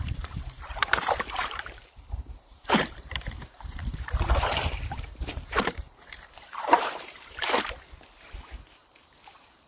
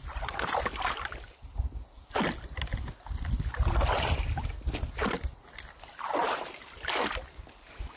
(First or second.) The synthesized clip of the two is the first